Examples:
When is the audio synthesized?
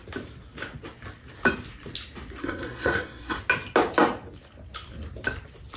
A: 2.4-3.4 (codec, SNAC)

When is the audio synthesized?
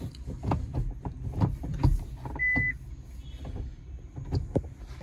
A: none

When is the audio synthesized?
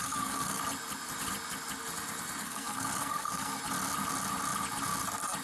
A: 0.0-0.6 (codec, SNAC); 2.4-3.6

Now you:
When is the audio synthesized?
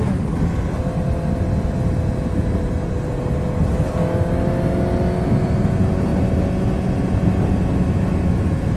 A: none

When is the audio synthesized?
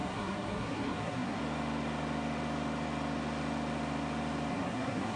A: 0.0-1.4 (codec, SNAC); 4.5-5.2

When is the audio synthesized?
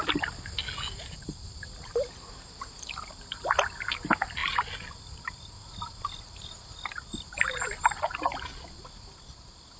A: none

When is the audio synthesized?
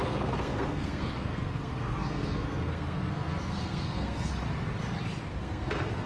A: 0.0-4.3 (codec, SNAC); 5.3-6.1